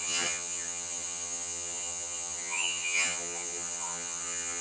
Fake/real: fake